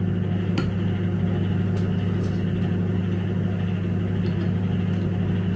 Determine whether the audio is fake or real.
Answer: real